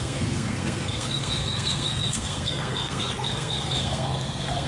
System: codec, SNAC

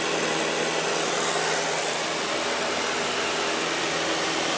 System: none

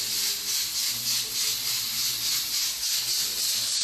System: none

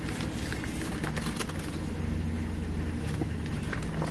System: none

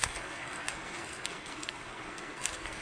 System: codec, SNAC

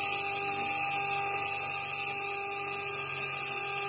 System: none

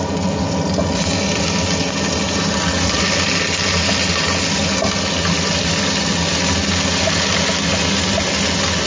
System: none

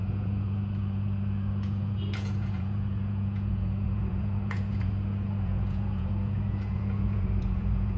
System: vocoder, Vocos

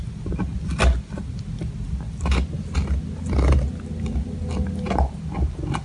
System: none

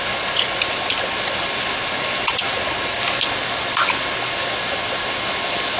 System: none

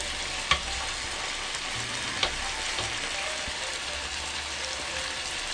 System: none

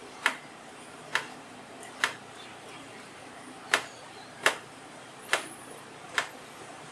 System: vocoder, BigVGAN v2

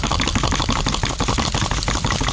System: none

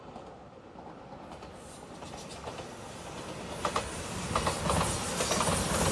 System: none